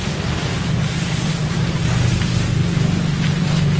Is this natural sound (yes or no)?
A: yes